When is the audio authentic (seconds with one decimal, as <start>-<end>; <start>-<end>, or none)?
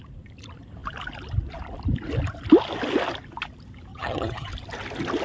0.0-3.9; 4.5-5.2